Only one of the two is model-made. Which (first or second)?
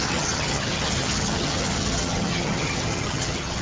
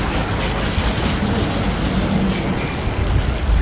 first